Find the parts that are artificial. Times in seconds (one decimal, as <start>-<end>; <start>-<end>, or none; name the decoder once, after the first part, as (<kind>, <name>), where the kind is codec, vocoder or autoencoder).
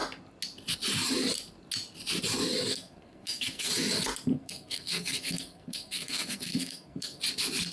2.7-3.7 (codec, SNAC); 4.3-7.2